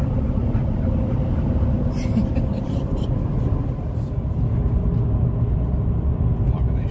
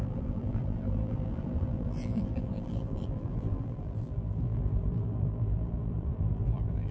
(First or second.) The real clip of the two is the first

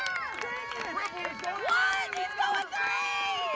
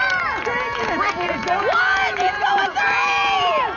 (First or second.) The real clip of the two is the first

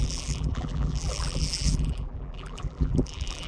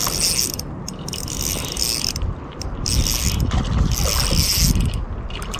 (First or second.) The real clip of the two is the second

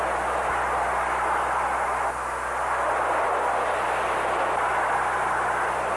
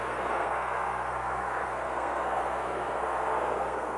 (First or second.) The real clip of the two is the first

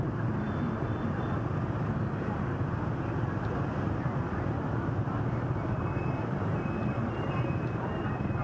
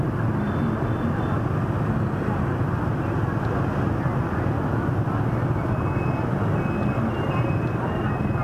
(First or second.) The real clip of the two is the second